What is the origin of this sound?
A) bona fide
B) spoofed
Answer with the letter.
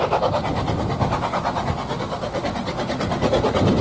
A